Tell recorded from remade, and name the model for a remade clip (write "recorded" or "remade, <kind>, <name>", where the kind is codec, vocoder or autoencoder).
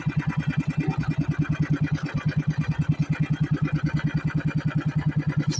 recorded